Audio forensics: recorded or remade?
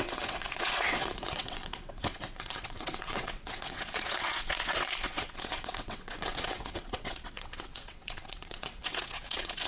remade